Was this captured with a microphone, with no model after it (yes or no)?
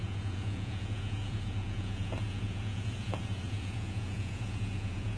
no